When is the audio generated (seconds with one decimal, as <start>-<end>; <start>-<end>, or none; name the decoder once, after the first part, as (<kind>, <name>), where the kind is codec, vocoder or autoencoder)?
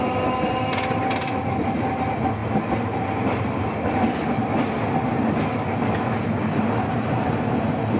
none